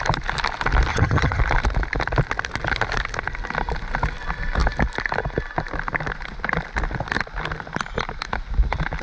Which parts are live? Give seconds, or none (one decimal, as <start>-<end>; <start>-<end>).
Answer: 0.0-0.9; 1.4-9.0